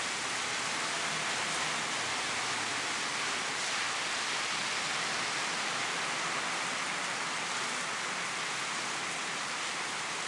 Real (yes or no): yes